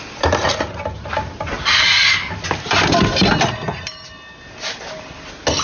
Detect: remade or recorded recorded